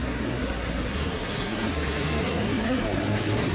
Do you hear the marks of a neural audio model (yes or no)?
yes